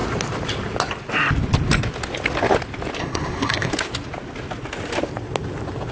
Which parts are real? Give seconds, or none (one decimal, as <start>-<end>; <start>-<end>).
0.0-3.0; 3.7-5.9